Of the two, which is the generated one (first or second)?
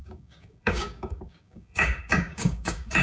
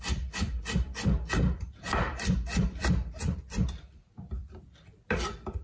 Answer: first